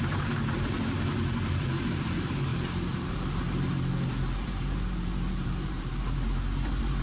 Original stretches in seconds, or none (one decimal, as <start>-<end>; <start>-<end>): none